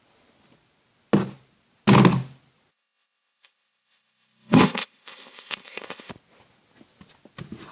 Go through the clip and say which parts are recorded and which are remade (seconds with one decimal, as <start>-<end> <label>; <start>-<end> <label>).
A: 0.0-2.7 recorded; 2.7-6.1 remade; 6.1-7.7 recorded